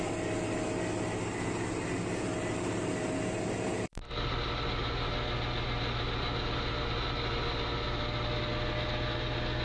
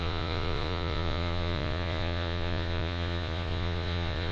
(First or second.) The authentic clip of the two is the first